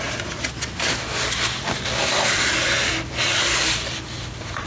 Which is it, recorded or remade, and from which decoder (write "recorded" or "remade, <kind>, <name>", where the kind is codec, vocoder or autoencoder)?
remade, vocoder, BigVGAN v2